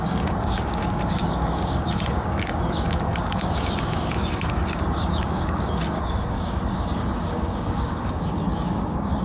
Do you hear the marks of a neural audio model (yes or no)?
yes